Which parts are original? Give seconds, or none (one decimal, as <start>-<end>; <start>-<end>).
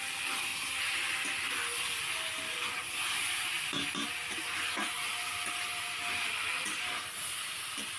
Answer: 0.0-8.0